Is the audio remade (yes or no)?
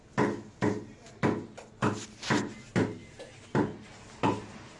no